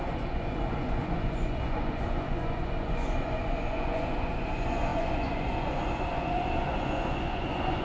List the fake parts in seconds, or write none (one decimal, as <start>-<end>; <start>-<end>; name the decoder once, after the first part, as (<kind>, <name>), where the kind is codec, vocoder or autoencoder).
0.0-7.8 (vocoder, Vocos)